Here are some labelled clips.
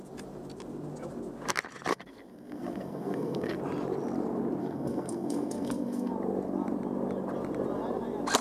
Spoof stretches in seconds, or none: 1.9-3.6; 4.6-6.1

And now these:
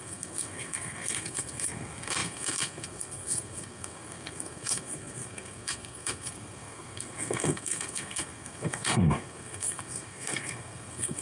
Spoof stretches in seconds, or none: 0.0-11.2